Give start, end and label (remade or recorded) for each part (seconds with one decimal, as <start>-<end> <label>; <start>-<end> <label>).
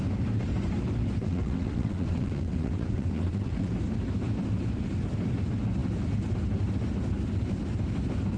0.0-1.2 recorded; 1.2-3.7 remade; 3.7-8.4 recorded